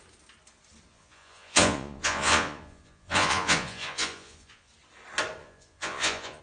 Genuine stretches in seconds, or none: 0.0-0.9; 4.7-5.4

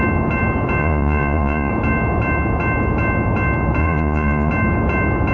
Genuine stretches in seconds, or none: 0.0-0.8; 1.7-3.8; 4.5-5.3

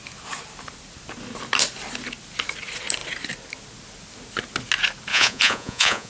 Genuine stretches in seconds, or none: 0.0-5.1

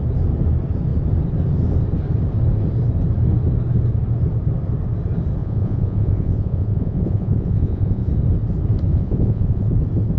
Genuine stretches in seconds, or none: 0.0-5.4; 8.1-8.9; 9.7-10.2

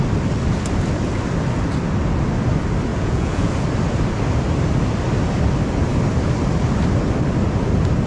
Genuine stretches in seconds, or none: 0.0-2.9; 3.5-8.1

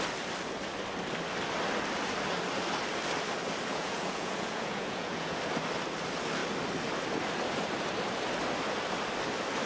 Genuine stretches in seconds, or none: 0.0-3.7; 5.4-9.7